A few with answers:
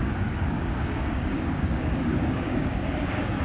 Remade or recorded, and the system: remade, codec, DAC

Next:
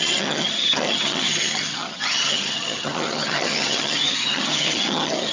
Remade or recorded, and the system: remade, vocoder, HiFi-GAN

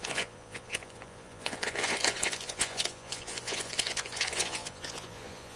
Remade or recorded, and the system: remade, vocoder, Vocos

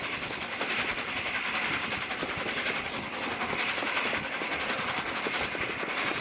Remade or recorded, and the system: recorded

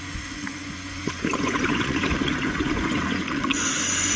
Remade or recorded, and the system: remade, vocoder, Vocos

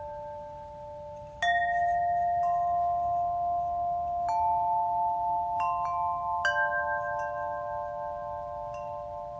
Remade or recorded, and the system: recorded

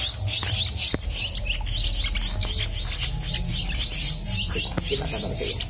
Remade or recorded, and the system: recorded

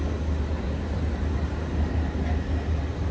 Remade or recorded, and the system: recorded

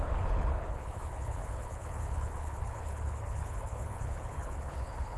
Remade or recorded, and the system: remade, codec, HILCodec